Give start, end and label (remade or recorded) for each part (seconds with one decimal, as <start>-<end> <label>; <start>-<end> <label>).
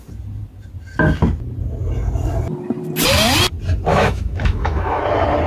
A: 0.0-3.9 recorded; 3.9-5.0 remade; 5.0-5.5 recorded